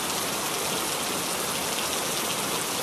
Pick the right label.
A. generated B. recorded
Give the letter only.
B